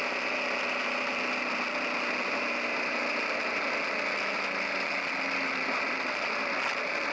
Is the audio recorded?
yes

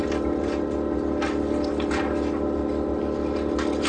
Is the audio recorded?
yes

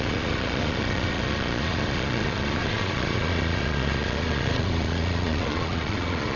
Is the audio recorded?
no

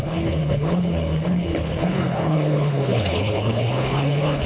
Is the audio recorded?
no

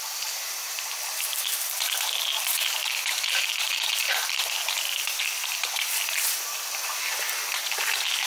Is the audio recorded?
yes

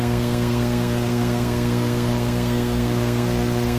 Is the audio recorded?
no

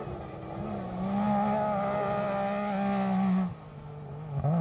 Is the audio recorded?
yes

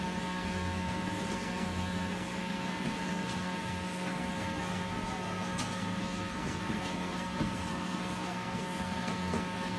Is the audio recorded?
no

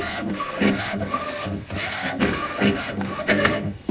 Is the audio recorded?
no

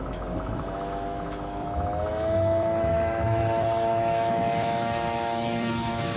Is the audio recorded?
no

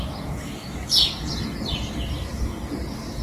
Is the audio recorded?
yes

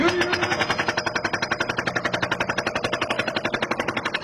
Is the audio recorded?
yes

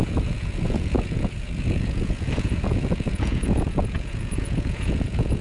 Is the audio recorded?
no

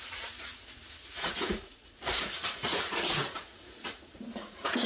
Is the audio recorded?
no